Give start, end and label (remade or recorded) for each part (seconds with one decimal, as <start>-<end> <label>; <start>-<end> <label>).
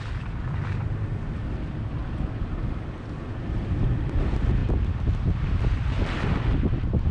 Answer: 0.0-2.0 remade; 2.0-3.4 recorded; 3.4-7.1 remade